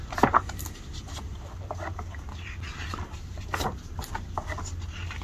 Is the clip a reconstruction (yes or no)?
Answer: no